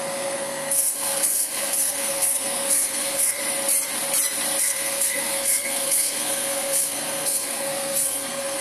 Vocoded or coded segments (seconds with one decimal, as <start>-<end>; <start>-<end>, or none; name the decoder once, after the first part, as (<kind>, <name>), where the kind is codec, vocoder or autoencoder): 0.0-3.4 (codec, SNAC); 4.6-8.6